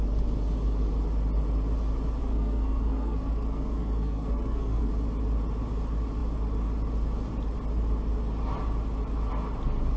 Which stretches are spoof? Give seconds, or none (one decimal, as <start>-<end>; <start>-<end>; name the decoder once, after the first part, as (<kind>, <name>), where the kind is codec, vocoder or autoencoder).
2.2-4.9 (codec, SNAC)

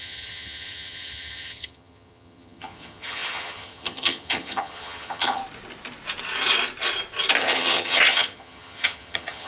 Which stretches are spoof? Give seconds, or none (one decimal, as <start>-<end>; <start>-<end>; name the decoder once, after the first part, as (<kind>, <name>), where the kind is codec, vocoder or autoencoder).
0.0-5.4 (vocoder, HiFi-GAN); 7.4-9.5

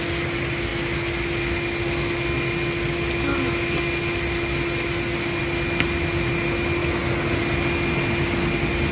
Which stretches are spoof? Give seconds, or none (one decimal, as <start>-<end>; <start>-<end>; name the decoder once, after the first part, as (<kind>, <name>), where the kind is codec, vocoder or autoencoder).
none

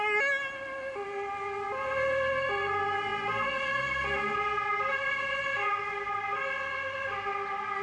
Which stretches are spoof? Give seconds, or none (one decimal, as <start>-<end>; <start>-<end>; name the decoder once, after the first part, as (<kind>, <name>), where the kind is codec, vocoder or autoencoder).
none